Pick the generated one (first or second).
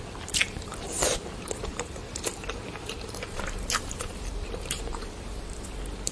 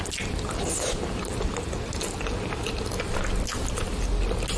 first